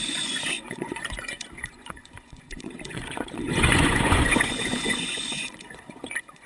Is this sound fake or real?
fake